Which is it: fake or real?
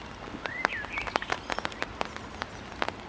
real